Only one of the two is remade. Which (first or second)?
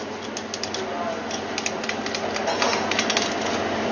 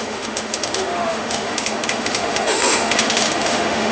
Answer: second